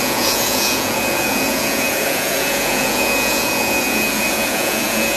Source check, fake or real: fake